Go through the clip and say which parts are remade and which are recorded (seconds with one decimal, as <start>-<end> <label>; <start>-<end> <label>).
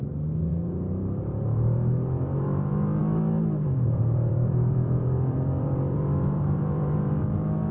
0.0-3.0 recorded; 3.0-7.2 remade; 7.2-7.7 recorded